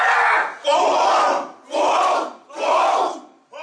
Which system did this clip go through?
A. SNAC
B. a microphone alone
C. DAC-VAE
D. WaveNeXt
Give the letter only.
B